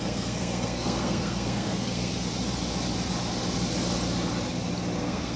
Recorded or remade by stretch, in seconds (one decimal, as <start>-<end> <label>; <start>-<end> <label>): 0.0-2.1 remade; 2.1-5.0 recorded; 5.0-5.4 remade